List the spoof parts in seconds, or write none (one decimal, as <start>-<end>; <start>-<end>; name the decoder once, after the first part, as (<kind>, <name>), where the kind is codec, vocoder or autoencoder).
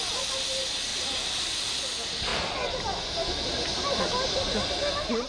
0.9-1.8 (vocoder, BigVGAN v2)